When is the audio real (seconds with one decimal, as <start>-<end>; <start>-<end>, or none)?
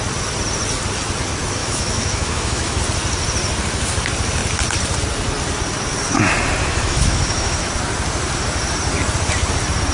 0.0-1.6; 2.8-6.6; 7.7-9.9